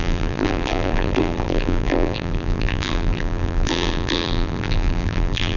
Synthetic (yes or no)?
yes